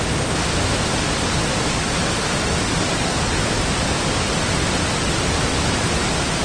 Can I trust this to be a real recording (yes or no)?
yes